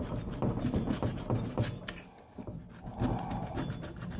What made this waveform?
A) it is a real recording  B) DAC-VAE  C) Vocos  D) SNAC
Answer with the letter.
A